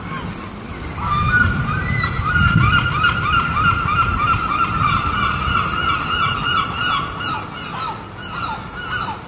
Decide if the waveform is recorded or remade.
recorded